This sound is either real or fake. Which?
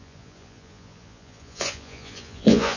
fake